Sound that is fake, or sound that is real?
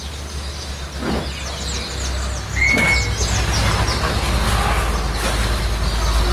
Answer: real